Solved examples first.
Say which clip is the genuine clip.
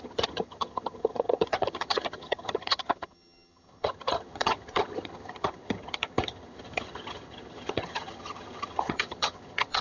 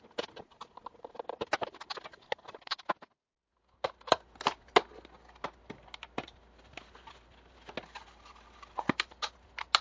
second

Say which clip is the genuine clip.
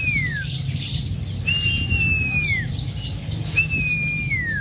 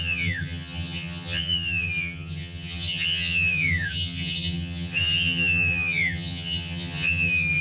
first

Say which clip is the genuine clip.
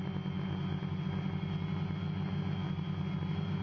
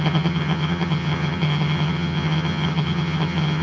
first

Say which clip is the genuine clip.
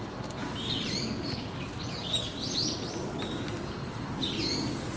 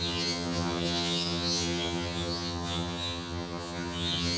first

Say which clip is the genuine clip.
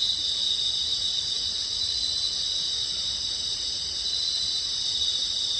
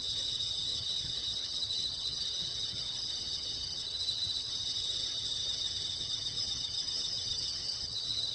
first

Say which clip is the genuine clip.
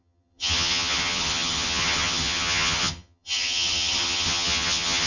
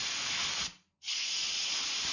second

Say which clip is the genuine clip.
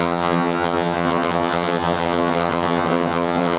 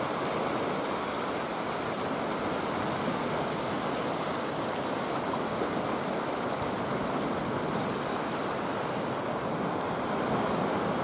second